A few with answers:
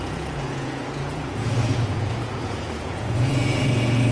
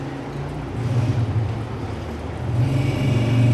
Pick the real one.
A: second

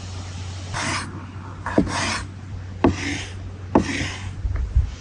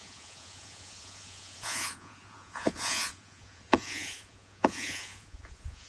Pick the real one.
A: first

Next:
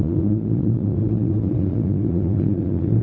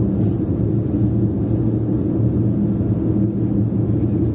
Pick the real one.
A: second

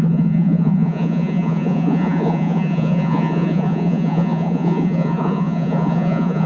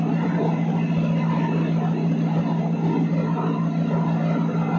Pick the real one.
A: second